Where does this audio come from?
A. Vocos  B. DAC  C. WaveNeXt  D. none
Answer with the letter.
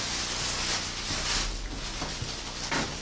D